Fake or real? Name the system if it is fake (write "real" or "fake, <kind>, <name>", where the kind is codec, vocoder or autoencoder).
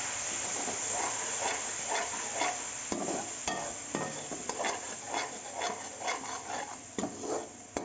real